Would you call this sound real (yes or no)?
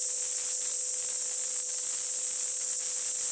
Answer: yes